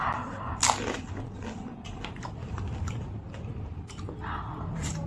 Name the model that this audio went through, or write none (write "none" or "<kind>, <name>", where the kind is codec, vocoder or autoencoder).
none